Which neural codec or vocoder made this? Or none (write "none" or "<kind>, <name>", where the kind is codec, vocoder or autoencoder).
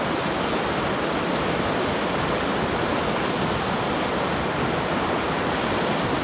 none